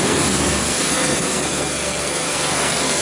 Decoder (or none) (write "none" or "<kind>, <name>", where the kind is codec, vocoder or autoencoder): codec, SNAC